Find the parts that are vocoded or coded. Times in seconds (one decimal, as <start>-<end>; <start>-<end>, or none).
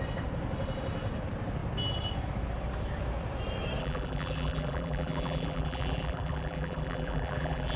3.8-7.8